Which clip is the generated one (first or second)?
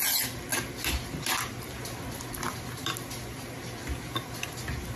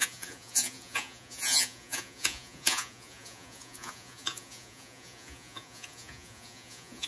second